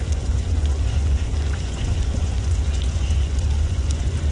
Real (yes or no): no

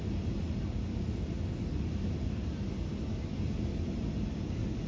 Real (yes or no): yes